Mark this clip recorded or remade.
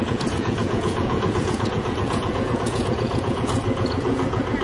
remade